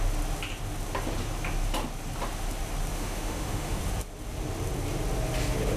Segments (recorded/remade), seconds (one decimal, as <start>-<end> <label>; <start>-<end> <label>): 0.0-2.9 recorded; 2.9-3.8 remade; 3.8-5.8 recorded